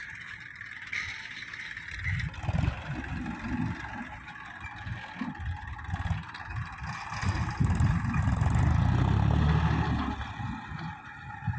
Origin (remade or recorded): recorded